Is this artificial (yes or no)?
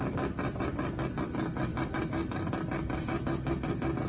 no